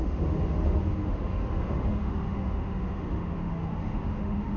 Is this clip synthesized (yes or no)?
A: yes